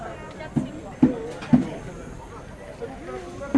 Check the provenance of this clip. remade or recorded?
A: recorded